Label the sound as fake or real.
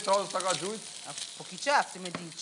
real